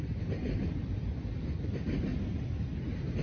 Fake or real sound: real